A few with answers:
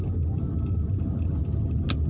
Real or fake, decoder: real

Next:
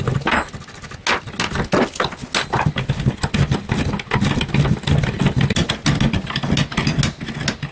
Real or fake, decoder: real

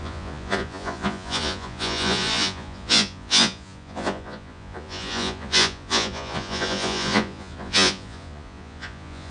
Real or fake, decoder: fake, vocoder, Vocos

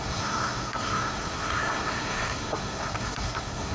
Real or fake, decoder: fake, codec, SNAC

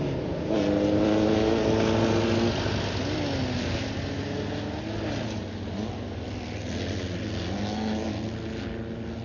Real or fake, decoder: real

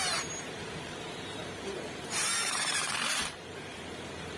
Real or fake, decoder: fake, vocoder, BigVGAN v2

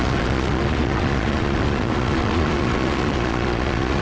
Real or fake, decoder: fake, vocoder, Vocos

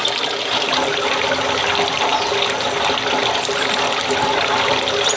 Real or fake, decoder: real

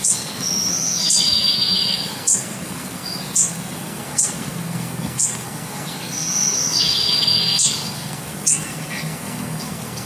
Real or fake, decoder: fake, codec, SNAC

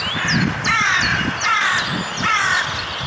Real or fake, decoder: real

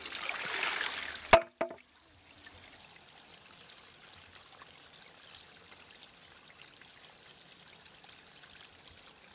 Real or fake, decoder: real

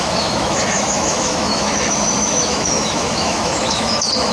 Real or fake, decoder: fake, autoencoder, DAC-VAE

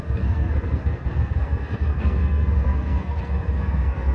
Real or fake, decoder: fake, codec, SNAC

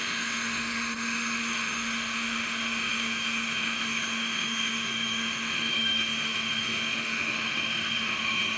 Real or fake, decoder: fake, autoencoder, DAC-VAE